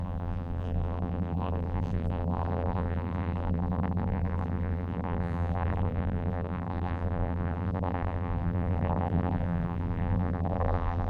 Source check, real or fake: fake